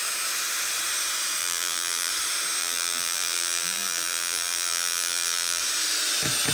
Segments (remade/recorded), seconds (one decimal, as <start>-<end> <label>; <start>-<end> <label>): 0.0-1.4 recorded; 1.4-2.1 remade; 2.1-2.6 recorded; 2.6-5.6 remade; 5.6-6.5 recorded